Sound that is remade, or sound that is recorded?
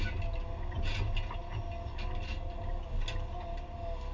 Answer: recorded